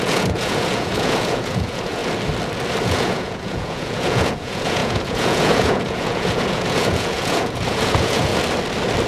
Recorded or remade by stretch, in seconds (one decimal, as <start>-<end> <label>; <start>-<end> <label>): 0.0-2.0 remade; 2.0-2.8 recorded; 2.8-8.3 remade; 8.3-9.1 recorded

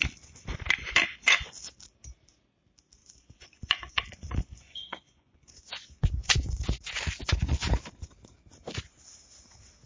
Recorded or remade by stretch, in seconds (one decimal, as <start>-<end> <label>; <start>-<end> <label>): 0.0-3.0 recorded; 3.0-6.6 remade; 6.6-9.9 recorded

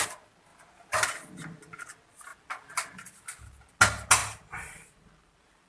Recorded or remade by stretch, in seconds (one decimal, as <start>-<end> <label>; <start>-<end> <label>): 0.0-4.2 recorded; 4.2-5.7 remade

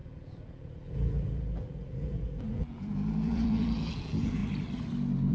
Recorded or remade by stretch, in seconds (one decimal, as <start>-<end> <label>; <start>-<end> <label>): 0.0-4.4 remade; 4.4-5.3 recorded

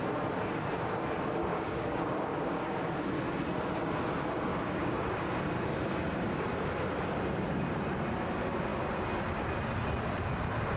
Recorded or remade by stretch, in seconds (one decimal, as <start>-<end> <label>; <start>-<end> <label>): 0.0-1.4 recorded; 1.4-2.8 remade; 2.8-4.5 recorded; 4.5-5.4 remade; 5.4-10.8 recorded

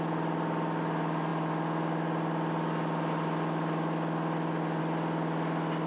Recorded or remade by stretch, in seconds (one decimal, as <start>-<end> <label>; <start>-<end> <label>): 0.0-5.9 recorded

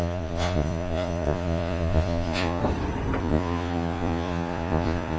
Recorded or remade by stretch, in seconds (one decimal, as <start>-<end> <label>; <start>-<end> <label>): 0.0-2.6 remade; 2.6-3.2 recorded; 3.2-5.2 remade

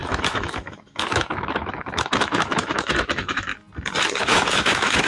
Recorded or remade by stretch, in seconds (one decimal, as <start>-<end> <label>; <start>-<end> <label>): 0.0-3.5 remade; 3.5-4.2 recorded; 4.2-5.1 remade